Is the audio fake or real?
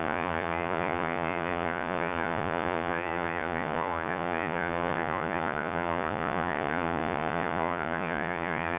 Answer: fake